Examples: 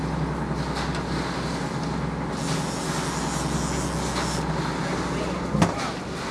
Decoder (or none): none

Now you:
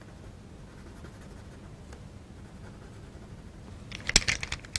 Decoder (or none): none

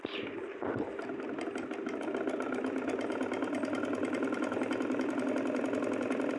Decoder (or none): none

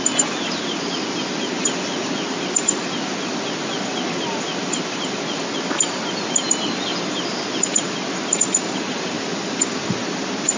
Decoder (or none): none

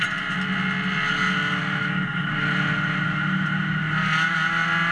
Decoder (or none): none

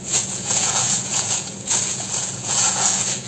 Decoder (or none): vocoder, Vocos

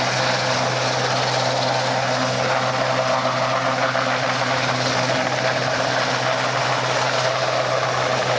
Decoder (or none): none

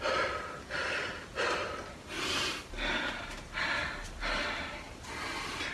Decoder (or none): none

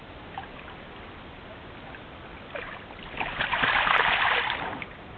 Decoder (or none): none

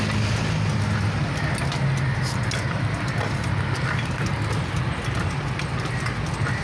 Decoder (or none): none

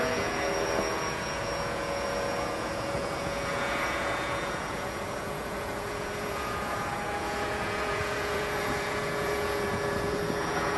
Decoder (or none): vocoder, Vocos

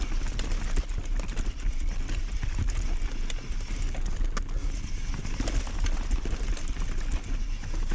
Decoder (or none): none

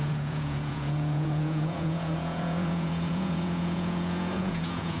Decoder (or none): vocoder, Vocos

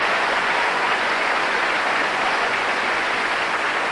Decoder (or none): vocoder, Vocos